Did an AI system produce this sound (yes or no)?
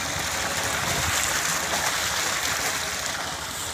no